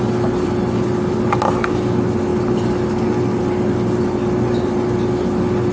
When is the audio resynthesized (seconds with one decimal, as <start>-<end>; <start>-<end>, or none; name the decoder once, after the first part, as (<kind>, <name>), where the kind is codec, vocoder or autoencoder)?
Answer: none